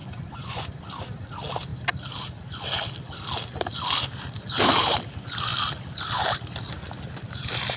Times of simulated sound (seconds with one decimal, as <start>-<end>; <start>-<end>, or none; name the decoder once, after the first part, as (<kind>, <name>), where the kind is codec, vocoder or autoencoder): 0.0-0.8 (vocoder, Vocos)